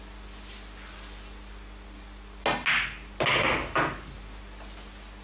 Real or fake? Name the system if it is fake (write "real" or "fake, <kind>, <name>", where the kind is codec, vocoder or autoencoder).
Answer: real